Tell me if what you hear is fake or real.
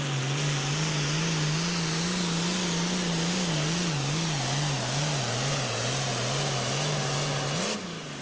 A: real